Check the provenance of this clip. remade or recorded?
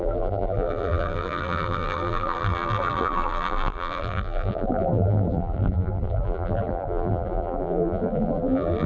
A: remade